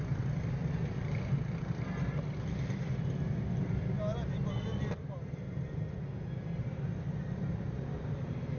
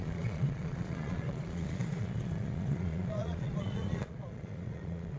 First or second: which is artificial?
second